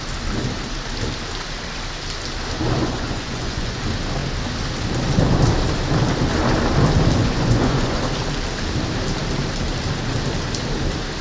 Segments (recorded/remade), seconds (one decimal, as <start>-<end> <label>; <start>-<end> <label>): 0.0-2.8 recorded; 2.8-3.8 remade; 3.8-7.2 recorded; 7.2-8.0 remade; 8.0-11.2 recorded